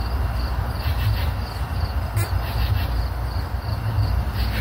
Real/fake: real